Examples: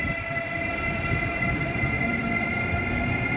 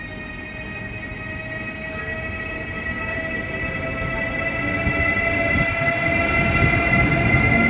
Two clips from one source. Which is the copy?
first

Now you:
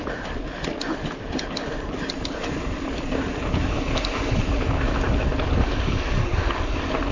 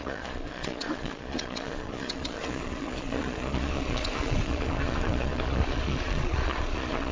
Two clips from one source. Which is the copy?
second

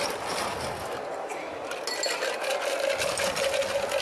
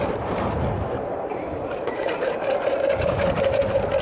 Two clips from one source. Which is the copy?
second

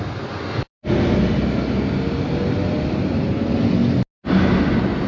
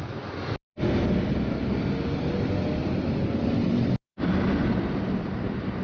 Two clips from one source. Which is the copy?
second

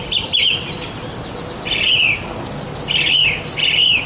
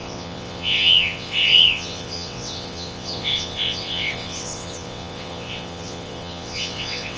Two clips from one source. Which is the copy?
second